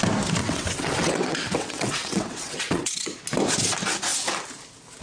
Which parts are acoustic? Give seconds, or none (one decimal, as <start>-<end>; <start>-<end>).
0.0-0.4; 3.1-5.0